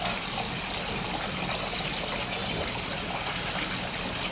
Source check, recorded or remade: recorded